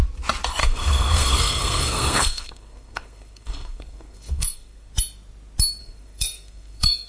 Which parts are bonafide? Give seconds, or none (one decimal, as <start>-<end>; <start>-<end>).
0.0-0.6; 4.9-5.8